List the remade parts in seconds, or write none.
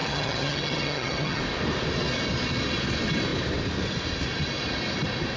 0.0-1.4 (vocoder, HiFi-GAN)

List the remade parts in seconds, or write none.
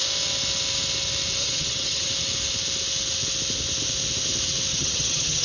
1.4-2.1 (vocoder, HiFi-GAN); 4.7-5.4